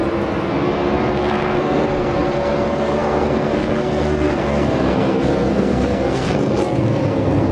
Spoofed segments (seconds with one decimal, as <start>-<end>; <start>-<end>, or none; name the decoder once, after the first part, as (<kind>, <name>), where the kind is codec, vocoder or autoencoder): 1.1-7.5 (codec, SNAC)